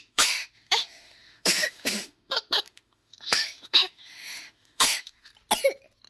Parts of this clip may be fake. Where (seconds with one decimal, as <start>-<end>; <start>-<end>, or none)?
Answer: 0.0-5.3